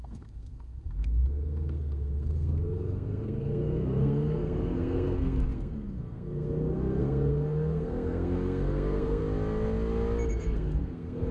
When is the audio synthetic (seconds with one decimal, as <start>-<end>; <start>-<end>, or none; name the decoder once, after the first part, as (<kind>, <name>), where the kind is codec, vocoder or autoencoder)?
0.0-9.2 (codec, SNAC); 10.3-11.3